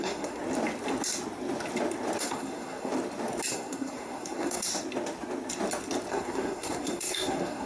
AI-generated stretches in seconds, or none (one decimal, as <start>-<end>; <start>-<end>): 0.0-0.4; 2.2-2.9; 3.5-4.7; 6.1-7.7

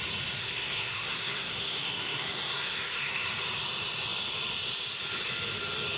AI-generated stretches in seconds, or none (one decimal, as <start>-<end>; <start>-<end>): 0.4-3.3

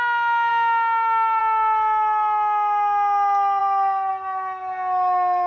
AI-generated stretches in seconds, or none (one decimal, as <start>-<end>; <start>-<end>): none

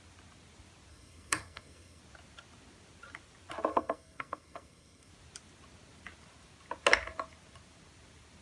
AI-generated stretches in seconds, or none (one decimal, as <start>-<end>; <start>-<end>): 0.9-2.0; 3.7-5.1